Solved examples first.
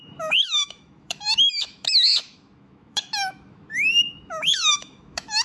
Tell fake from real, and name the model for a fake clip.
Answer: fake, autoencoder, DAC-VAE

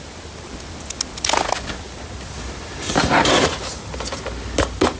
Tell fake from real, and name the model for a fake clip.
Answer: real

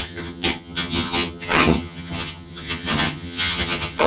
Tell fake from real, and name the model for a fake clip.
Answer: fake, vocoder, HiFi-GAN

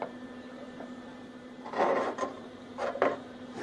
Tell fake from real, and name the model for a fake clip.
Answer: fake, vocoder, BigVGAN v2